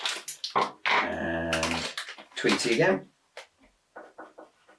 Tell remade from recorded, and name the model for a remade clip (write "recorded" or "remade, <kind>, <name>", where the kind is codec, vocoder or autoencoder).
recorded